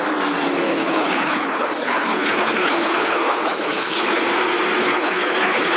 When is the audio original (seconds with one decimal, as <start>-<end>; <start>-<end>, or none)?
0.0-0.7; 4.2-4.8